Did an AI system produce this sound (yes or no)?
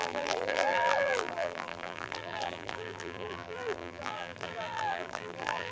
yes